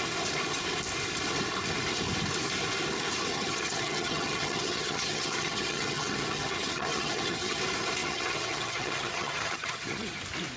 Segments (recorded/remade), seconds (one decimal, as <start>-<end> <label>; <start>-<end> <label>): 0.0-3.3 recorded; 3.3-7.6 remade; 7.6-8.0 recorded; 8.0-10.2 remade; 10.2-10.6 recorded